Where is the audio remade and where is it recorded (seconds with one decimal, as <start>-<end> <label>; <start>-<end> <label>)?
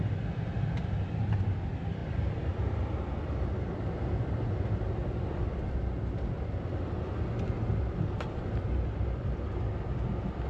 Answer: 0.0-10.5 recorded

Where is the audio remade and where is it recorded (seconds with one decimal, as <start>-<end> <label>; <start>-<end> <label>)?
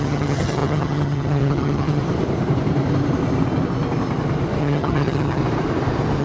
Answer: 0.0-2.0 remade; 2.0-4.6 recorded; 4.6-5.4 remade; 5.4-6.2 recorded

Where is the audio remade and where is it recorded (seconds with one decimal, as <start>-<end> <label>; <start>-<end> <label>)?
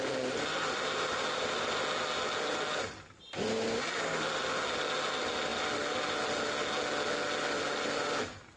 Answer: 0.0-8.6 recorded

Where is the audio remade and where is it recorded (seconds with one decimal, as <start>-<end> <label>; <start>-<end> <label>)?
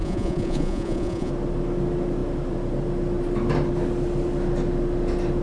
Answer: 0.0-1.3 remade; 1.3-5.4 recorded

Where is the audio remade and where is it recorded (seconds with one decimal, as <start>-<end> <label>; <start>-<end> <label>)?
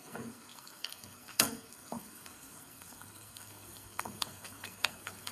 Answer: 0.0-5.3 remade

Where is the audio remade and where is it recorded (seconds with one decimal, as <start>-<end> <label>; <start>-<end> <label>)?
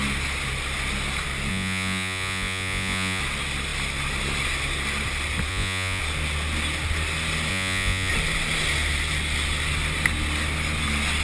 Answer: 0.0-1.5 recorded; 1.5-3.2 remade; 3.2-5.5 recorded; 5.5-6.0 remade; 6.0-7.5 recorded; 7.5-8.1 remade; 8.1-11.2 recorded